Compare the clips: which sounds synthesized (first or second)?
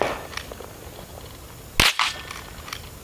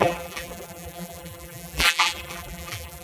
second